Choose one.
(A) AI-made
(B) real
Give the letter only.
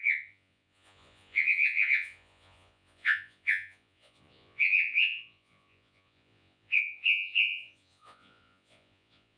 A